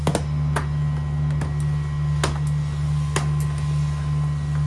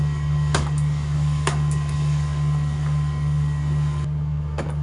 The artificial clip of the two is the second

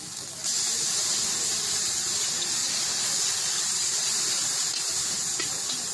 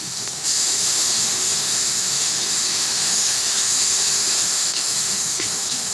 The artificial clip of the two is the second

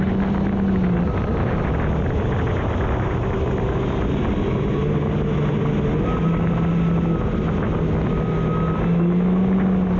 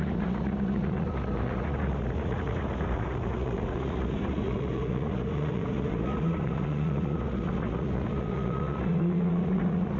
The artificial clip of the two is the second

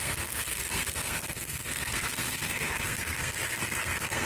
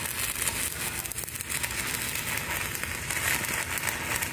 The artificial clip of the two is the first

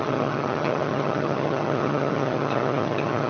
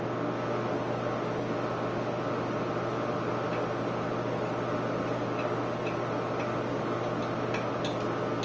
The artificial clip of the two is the first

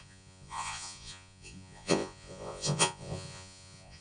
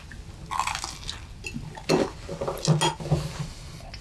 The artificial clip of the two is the first